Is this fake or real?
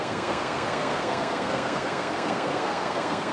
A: fake